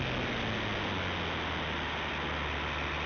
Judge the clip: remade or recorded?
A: recorded